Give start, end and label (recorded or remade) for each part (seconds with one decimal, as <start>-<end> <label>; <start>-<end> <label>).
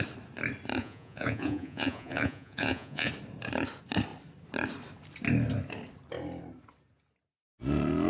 0.0-0.8 recorded; 0.8-3.1 remade; 3.1-8.1 recorded